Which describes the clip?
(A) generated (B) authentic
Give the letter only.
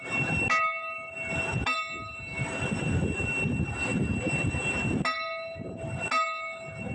B